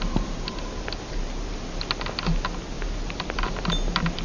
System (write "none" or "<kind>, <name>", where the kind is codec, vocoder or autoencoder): none